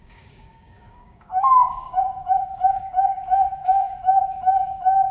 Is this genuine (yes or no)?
no